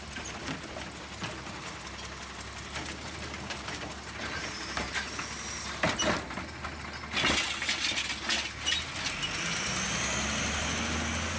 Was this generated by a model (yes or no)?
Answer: no